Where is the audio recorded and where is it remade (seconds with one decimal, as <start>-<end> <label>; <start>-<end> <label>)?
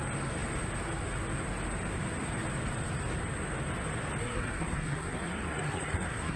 0.0-4.2 recorded; 4.2-6.4 remade